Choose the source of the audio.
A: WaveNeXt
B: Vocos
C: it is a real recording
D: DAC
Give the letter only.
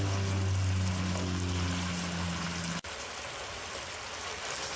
C